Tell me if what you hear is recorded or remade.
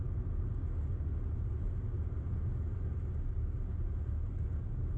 recorded